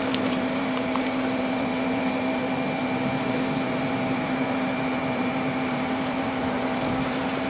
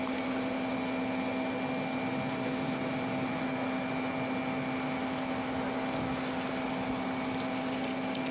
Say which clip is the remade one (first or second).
first